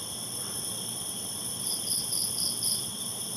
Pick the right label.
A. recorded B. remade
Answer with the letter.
B